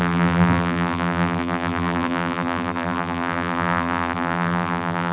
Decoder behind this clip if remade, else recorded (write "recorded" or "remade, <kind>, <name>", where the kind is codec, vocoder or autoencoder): remade, vocoder, BigVGAN v2